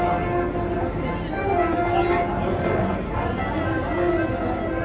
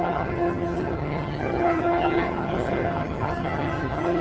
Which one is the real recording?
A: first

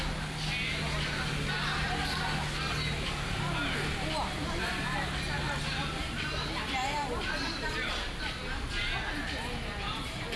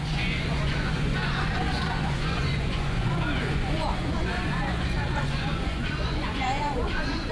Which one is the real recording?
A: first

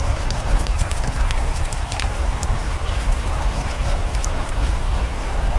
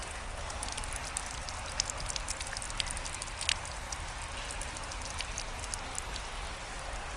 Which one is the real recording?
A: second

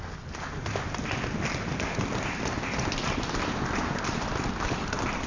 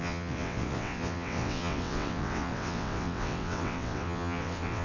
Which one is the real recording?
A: first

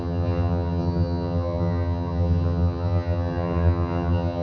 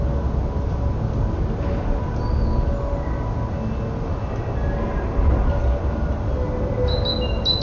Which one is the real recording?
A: second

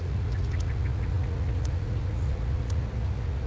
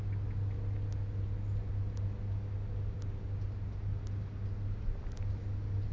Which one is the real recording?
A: second